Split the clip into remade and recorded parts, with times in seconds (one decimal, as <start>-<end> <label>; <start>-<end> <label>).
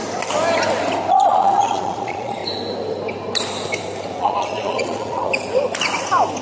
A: 0.0-1.1 recorded; 1.1-2.4 remade; 2.4-4.2 recorded; 4.2-5.3 remade; 5.3-6.4 recorded